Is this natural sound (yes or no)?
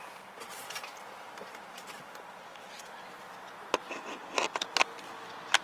yes